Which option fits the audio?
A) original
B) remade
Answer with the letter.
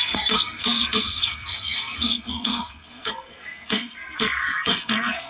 B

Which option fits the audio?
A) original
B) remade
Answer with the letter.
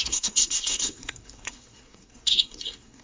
B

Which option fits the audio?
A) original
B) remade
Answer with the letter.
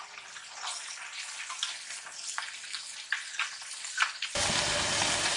A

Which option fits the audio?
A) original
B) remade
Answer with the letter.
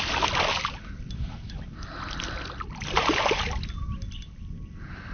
A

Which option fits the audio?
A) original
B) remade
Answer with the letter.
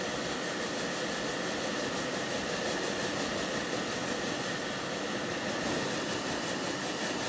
A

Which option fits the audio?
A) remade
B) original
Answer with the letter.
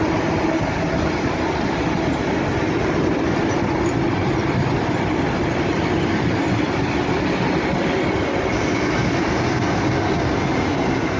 B